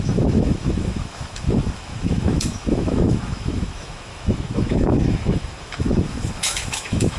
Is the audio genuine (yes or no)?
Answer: no